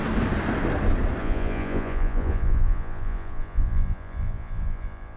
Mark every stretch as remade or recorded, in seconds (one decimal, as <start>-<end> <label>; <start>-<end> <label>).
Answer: 0.0-1.2 recorded; 1.2-5.2 remade